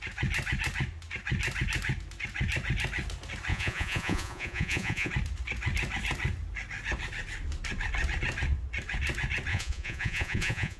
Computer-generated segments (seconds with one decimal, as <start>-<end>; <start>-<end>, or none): 3.5-5.1; 9.5-10.8